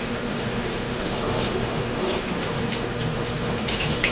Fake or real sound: fake